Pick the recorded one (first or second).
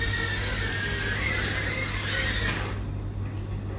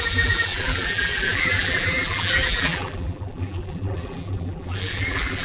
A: first